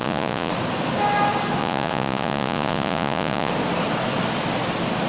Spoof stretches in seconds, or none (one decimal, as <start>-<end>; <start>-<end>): 0.0-0.5; 1.6-3.5